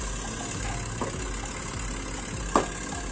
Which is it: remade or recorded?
recorded